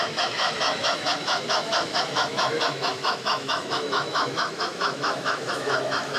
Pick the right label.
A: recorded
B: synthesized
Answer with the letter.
B